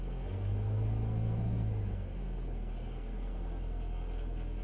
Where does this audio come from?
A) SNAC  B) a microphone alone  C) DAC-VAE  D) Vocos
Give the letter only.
A